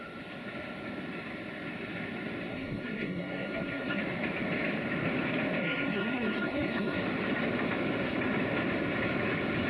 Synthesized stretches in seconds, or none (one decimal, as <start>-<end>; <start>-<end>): 2.5-4.0; 5.6-7.0